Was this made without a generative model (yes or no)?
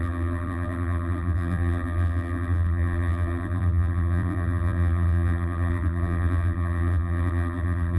no